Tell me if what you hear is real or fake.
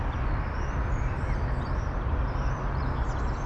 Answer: real